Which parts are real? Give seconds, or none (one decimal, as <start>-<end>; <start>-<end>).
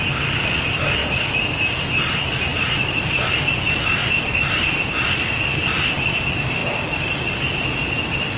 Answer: 0.0-1.0; 1.7-2.5; 3.5-4.0; 4.7-8.4